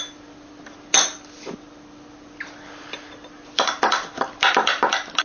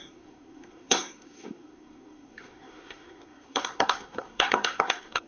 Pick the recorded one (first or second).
first